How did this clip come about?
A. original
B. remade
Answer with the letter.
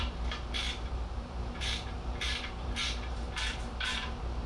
B